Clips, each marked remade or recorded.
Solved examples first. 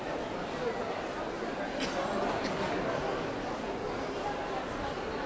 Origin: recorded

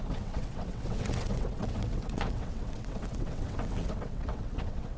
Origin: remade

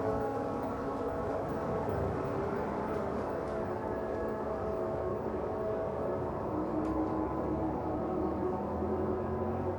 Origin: remade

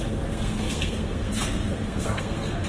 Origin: remade